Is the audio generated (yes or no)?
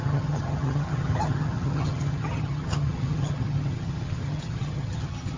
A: yes